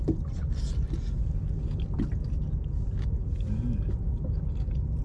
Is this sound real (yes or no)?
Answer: yes